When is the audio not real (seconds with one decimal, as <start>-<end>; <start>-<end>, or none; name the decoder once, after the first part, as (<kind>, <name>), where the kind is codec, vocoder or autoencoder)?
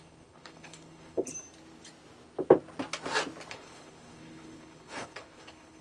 0.0-1.3 (codec, HILCodec); 3.5-5.8